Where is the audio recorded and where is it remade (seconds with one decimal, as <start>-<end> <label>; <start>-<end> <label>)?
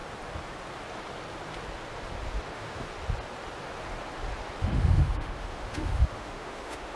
0.0-2.5 recorded; 2.5-2.9 remade; 2.9-4.6 recorded; 4.6-7.0 remade